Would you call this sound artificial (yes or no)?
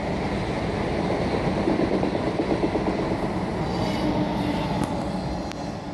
no